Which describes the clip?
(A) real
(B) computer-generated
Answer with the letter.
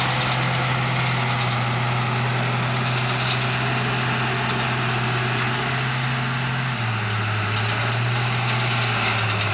A